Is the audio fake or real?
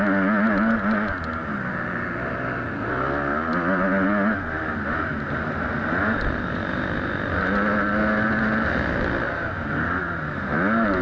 real